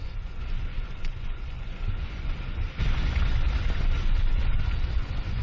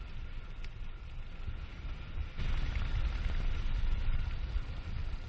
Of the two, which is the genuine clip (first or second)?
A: second